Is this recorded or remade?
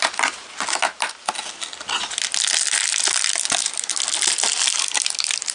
recorded